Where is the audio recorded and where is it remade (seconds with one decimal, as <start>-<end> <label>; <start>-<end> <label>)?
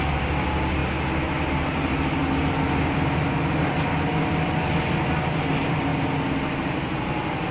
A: 0.0-7.5 recorded